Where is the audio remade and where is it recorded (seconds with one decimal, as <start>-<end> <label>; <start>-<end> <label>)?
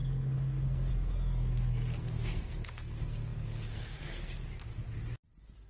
0.0-4.7 remade; 4.7-5.7 recorded